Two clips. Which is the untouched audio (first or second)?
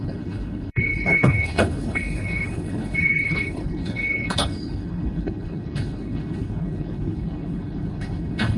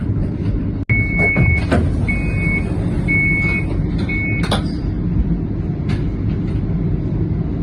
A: second